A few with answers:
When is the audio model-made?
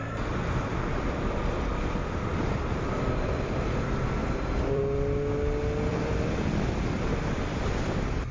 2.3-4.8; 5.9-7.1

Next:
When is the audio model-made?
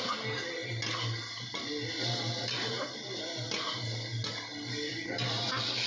none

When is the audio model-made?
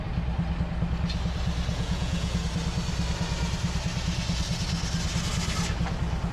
1.7-2.4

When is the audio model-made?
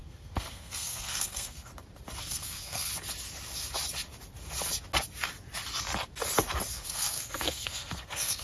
0.0-1.7; 2.2-2.9; 6.7-8.4